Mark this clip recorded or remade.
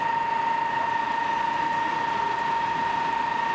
recorded